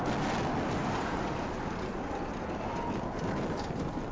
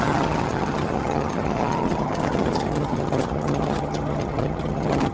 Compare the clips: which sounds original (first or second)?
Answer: first